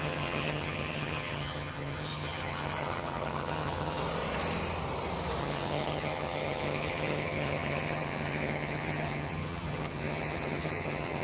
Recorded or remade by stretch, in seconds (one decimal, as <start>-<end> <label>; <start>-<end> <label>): 0.0-4.0 remade; 4.0-5.4 recorded; 5.4-11.2 remade

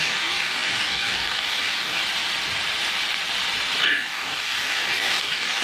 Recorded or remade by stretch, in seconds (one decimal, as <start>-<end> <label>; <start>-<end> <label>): 0.0-2.0 remade; 2.0-3.8 recorded; 3.8-5.6 remade